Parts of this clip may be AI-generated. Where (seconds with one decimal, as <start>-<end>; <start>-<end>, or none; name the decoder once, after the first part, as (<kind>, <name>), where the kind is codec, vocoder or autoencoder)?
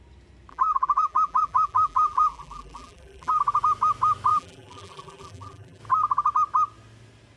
0.5-3.3 (vocoder, BigVGAN v2); 4.3-5.8